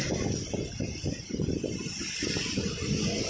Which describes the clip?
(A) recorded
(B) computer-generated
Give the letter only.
A